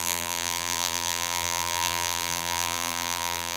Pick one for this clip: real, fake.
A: fake